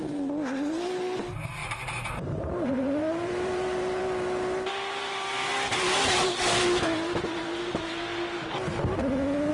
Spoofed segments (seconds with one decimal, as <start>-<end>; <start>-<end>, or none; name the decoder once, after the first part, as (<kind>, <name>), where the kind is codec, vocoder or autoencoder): 1.6-4.0 (vocoder, BigVGAN v2)